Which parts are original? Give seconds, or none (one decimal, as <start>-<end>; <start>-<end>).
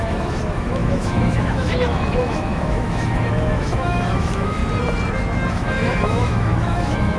4.6-5.5